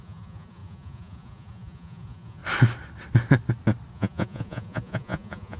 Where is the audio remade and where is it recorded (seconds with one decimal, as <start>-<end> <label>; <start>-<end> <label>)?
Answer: 0.0-2.4 remade; 2.4-3.9 recorded; 3.9-5.6 remade